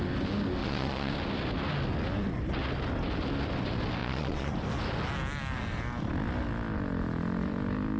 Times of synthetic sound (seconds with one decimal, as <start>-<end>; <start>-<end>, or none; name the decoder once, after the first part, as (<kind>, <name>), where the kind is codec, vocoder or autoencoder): 0.6-1.1 (vocoder, Vocos); 4.0-4.5